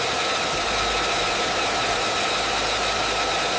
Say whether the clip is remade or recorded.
recorded